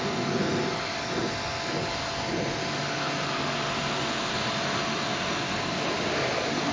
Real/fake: real